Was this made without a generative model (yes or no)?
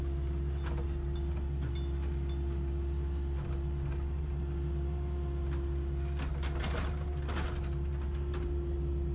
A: yes